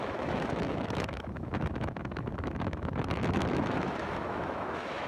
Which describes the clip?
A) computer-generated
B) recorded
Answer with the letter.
A